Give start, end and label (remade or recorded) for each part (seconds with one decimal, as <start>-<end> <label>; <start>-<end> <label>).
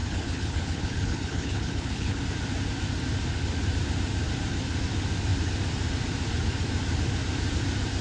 0.0-2.2 remade; 2.2-8.0 recorded